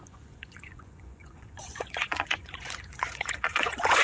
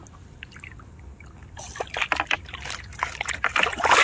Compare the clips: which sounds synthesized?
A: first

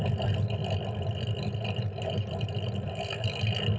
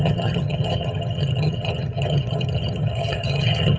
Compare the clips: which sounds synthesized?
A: second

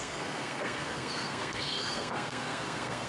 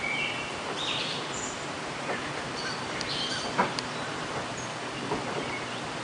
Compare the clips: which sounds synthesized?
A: first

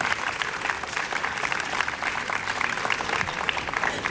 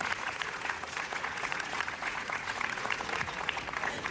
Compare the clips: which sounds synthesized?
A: second